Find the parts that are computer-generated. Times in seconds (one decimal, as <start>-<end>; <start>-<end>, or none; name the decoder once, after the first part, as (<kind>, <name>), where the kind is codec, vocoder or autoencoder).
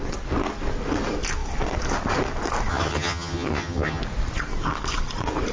2.7-4.0 (vocoder, HiFi-GAN)